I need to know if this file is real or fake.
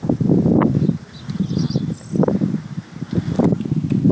real